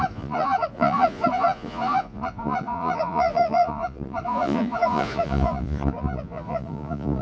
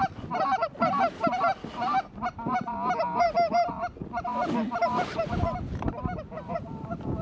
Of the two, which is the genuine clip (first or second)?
second